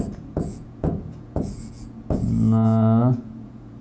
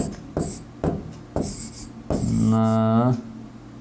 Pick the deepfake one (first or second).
first